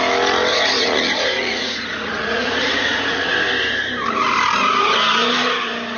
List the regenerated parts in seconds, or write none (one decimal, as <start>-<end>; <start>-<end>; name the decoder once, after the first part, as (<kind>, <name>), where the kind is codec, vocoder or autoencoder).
0.5-3.3 (vocoder, Vocos)